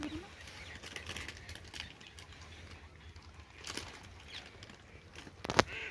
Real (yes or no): yes